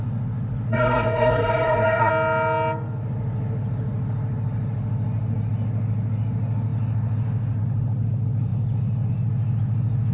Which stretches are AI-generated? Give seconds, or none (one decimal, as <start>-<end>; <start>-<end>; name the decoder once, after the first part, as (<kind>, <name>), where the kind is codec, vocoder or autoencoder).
0.7-2.1 (codec, SNAC)

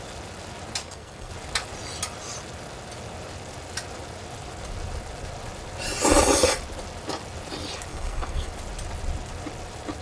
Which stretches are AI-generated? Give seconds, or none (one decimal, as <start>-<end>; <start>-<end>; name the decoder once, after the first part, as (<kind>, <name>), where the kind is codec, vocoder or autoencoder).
0.8-1.3 (codec, SNAC); 7.9-8.5

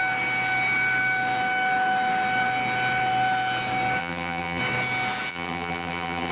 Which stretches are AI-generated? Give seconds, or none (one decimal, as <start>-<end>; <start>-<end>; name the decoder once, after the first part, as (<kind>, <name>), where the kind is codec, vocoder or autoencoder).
4.0-4.6 (vocoder, BigVGAN v2); 5.3-6.3

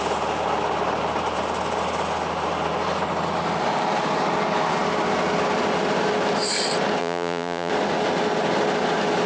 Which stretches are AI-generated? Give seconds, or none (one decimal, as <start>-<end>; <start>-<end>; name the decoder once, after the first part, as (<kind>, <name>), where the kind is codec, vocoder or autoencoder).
7.0-7.7 (vocoder, Vocos)

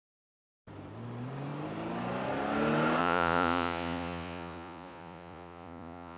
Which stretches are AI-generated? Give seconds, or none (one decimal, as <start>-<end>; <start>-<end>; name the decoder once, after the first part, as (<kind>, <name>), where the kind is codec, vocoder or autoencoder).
3.0-6.2 (vocoder, Vocos)

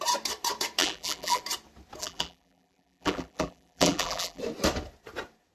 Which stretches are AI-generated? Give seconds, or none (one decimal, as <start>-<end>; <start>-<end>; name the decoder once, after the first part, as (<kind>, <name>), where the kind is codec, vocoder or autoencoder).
0.8-1.4 (vocoder, BigVGAN v2); 2.0-4.4

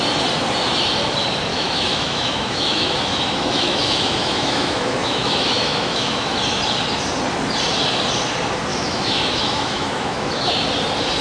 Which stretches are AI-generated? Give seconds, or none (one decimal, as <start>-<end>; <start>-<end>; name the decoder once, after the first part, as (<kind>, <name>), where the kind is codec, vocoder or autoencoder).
1.5-6.3 (autoencoder, DAC-VAE); 8.7-10.5

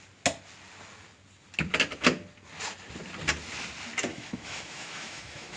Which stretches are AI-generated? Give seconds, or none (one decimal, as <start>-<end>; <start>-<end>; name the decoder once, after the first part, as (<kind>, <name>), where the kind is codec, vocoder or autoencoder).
4.1-5.6 (autoencoder, DAC-VAE)